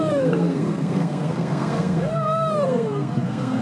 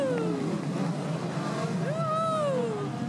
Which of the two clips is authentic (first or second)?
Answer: second